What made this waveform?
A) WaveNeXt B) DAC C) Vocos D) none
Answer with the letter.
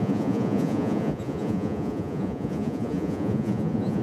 C